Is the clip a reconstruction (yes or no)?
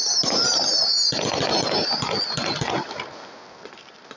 no